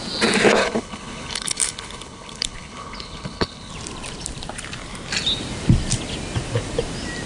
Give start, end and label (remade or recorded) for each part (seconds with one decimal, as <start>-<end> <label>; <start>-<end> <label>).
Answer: 0.0-0.6 recorded; 0.6-3.7 remade; 3.7-7.3 recorded